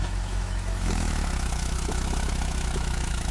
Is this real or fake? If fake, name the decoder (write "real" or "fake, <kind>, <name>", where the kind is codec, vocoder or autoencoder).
fake, autoencoder, DAC-VAE